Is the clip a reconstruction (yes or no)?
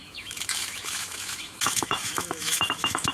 yes